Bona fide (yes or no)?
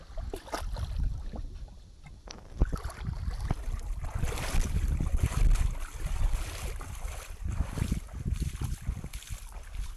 yes